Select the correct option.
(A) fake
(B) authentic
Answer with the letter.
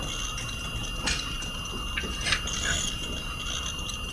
B